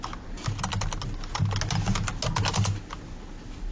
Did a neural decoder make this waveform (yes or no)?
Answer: no